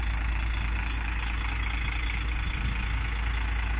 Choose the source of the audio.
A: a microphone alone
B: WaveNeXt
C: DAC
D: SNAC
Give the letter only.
A